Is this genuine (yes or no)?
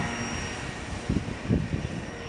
yes